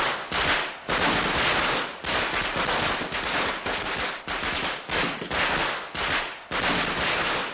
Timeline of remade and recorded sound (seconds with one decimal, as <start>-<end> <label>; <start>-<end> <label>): 0.0-7.5 recorded